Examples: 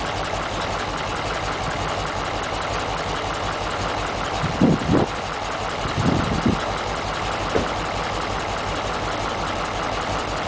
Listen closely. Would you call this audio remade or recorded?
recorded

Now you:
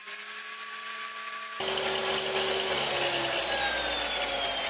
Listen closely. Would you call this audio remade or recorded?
recorded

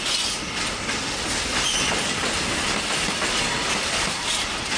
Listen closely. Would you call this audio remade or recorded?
recorded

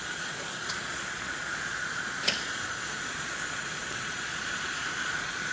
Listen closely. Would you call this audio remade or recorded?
remade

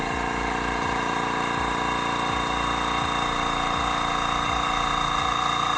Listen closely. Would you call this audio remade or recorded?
recorded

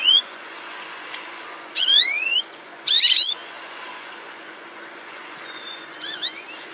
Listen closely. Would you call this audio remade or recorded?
remade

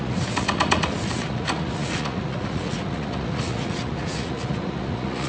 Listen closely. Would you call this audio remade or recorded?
remade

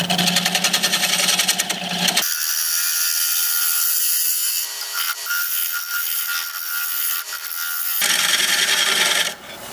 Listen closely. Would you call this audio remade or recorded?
recorded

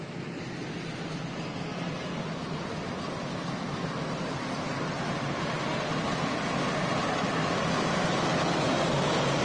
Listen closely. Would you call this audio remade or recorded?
recorded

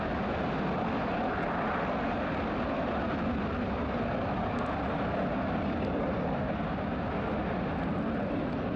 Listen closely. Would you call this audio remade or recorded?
recorded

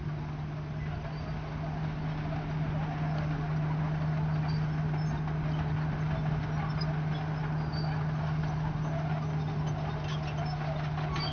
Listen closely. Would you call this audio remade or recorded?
recorded